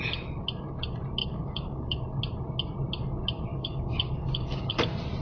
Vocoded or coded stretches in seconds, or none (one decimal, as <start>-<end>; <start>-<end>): 1.2-2.0; 3.5-4.8